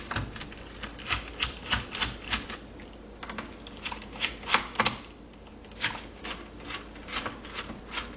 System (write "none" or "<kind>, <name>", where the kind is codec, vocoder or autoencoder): none